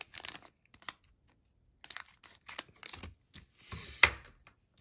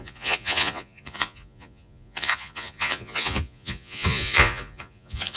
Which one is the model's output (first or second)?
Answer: second